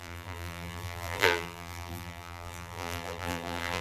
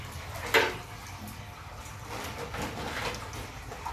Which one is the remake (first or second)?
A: first